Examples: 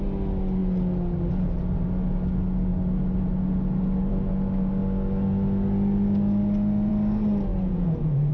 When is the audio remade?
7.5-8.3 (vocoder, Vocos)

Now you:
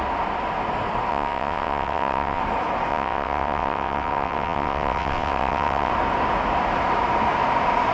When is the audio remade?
1.1-2.4 (vocoder, WaveNeXt); 2.9-5.9